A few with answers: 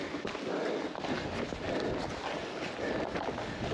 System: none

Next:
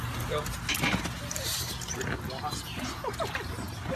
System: none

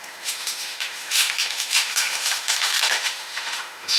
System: autoencoder, DAC-VAE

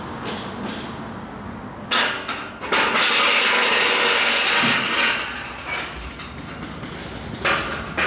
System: none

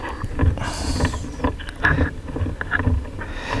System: none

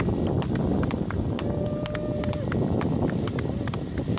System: none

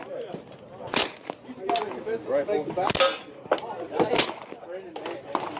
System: none